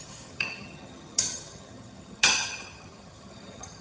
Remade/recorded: remade